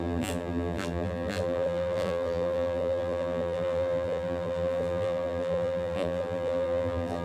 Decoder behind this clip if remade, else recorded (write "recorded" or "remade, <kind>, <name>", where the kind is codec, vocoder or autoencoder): remade, vocoder, BigVGAN v2